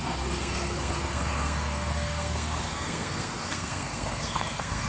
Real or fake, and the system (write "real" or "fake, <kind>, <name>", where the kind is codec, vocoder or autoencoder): fake, codec, SNAC